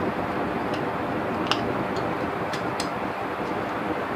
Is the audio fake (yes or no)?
no